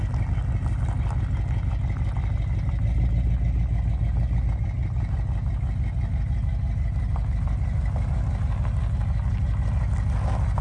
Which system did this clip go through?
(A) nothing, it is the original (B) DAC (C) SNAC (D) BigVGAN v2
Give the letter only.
A